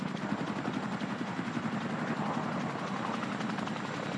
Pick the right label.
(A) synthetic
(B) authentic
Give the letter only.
B